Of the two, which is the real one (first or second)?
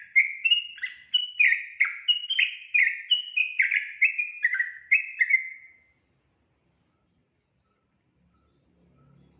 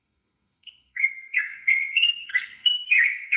first